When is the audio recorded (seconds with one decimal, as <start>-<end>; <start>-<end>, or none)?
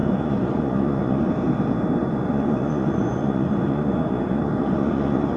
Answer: 1.3-2.0